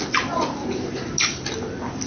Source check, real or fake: real